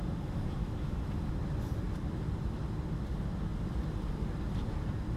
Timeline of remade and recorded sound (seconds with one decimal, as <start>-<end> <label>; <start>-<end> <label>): 0.0-0.6 recorded; 0.6-1.2 remade; 1.2-5.2 recorded